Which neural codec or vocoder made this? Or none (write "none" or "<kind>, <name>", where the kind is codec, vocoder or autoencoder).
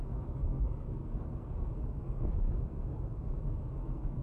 codec, SNAC